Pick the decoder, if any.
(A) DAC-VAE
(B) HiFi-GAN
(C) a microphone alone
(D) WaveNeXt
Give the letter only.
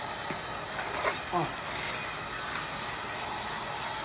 C